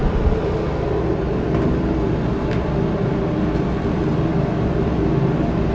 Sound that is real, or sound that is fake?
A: real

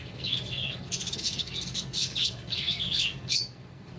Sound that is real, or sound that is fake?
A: fake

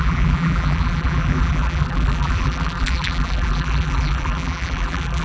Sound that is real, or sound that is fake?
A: fake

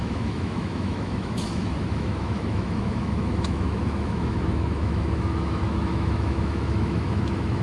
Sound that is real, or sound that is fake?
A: fake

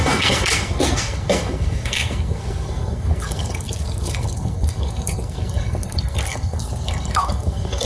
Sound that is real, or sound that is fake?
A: fake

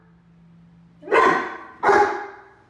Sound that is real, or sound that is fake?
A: real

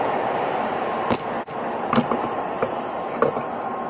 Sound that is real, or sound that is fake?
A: real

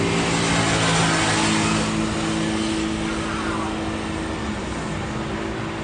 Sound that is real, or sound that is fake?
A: real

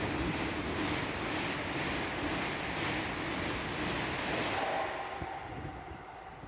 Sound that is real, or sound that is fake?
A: real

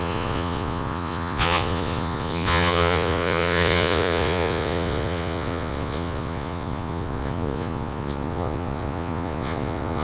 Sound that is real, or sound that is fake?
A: fake